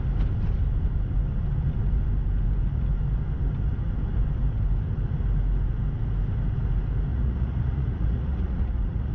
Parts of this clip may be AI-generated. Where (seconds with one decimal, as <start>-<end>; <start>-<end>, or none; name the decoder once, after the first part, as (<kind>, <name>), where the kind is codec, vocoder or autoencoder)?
7.1-9.1 (vocoder, Vocos)